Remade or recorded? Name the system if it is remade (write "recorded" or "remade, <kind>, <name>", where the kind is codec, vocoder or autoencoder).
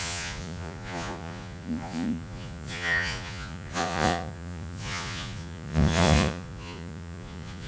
remade, vocoder, Vocos